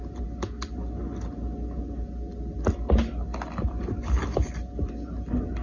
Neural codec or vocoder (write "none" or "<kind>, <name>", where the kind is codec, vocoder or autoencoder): none